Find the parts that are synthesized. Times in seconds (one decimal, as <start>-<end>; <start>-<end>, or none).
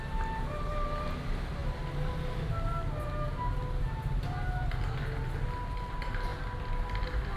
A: none